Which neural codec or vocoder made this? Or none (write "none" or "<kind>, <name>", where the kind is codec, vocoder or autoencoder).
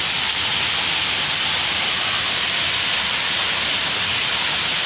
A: none